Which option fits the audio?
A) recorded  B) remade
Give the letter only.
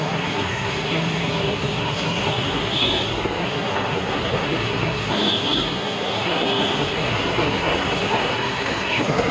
B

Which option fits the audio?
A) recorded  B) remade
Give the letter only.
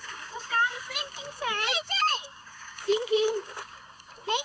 B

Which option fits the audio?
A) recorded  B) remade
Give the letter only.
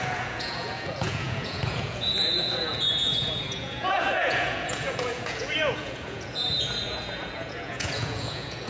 B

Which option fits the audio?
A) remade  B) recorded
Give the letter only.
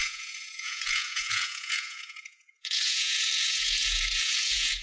A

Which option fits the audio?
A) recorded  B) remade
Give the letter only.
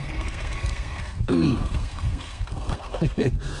B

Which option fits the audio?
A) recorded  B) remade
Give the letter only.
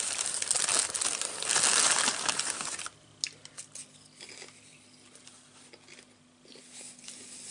A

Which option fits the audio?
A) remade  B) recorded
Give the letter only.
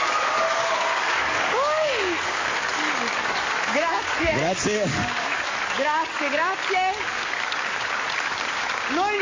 A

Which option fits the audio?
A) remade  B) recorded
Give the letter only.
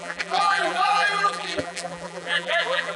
A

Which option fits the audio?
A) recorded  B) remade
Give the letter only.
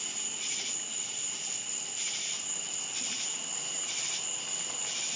A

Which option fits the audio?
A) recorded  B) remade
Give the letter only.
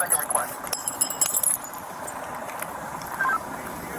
A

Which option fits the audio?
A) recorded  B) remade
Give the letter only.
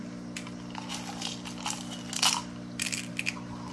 A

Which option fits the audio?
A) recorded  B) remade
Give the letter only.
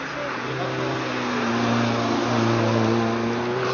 A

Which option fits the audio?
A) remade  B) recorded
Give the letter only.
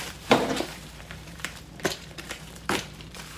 A